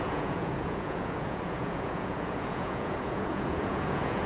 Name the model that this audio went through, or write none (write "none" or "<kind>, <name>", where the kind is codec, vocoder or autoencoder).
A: vocoder, Vocos